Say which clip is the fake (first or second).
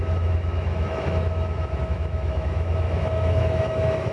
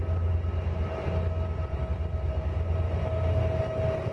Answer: first